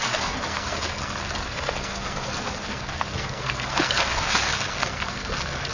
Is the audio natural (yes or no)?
no